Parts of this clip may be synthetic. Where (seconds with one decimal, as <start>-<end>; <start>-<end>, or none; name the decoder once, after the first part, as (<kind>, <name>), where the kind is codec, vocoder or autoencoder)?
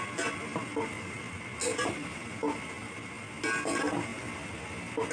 none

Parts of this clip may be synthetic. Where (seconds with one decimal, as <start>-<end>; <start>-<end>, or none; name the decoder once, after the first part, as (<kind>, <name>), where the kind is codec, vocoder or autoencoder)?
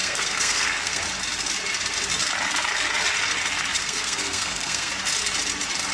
0.0-1.0 (codec, SNAC); 3.8-4.9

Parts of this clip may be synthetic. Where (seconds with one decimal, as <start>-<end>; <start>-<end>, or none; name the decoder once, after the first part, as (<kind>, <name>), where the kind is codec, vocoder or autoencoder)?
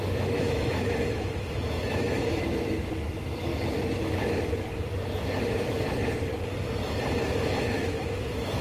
0.0-3.5 (autoencoder, DAC-VAE); 7.2-8.6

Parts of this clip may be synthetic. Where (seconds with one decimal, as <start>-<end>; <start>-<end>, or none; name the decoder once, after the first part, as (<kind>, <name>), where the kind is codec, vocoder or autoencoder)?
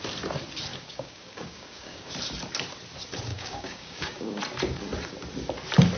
0.7-2.1 (codec, DAC); 3.3-4.4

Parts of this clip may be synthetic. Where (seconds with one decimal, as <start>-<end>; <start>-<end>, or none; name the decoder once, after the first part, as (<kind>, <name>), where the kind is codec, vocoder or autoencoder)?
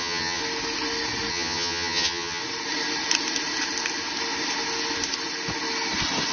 0.0-0.4 (vocoder, HiFi-GAN); 1.3-2.4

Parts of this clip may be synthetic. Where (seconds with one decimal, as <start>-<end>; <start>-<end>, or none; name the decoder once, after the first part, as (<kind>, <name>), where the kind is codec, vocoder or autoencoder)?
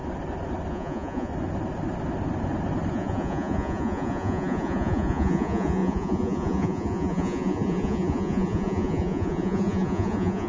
0.7-1.3 (vocoder, Vocos); 2.9-10.5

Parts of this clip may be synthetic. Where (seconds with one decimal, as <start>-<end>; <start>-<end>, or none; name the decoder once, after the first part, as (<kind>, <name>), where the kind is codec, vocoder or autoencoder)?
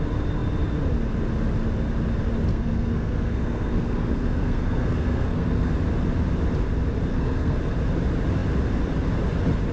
2.5-5.7 (codec, SNAC); 7.1-7.6